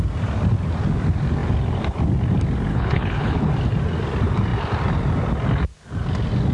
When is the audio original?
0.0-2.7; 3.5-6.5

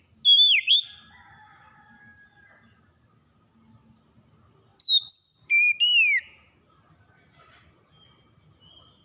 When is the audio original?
0.0-9.0

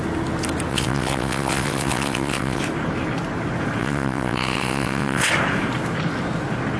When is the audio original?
0.0-0.7; 2.6-3.8; 5.3-6.8

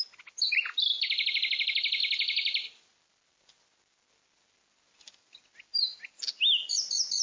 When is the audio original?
0.0-7.2

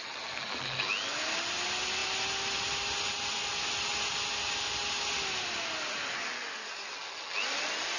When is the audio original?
0.0-8.0

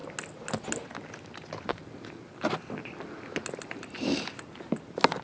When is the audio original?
0.0-5.2